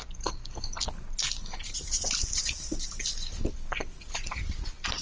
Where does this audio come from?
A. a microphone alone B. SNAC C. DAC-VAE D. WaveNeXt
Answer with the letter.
A